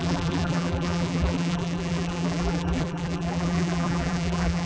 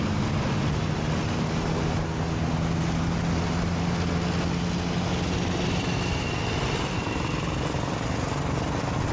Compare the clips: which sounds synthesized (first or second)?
first